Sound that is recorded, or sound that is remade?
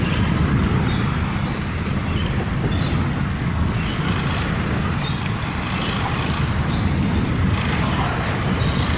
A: recorded